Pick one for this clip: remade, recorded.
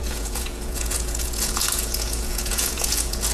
remade